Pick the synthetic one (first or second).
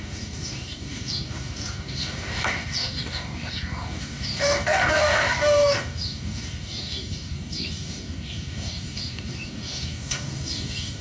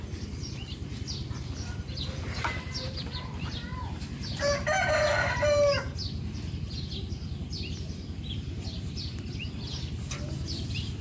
first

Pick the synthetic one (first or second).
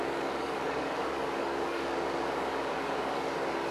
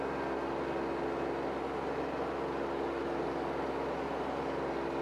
first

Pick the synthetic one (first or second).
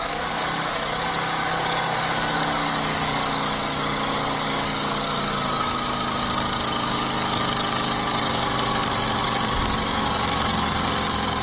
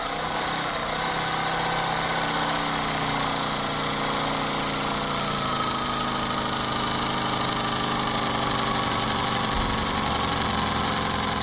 first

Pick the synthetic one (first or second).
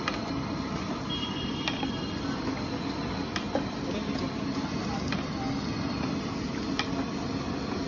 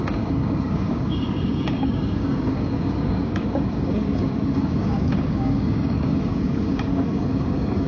second